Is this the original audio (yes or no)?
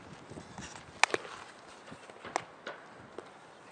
yes